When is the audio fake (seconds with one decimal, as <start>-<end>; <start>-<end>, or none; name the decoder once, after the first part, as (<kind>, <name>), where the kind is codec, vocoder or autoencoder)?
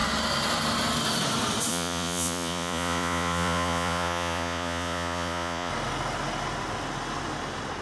1.7-5.7 (vocoder, Vocos)